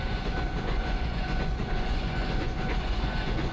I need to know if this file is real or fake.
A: fake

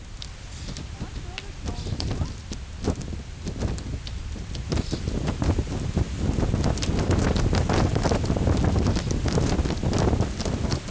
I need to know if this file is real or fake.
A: real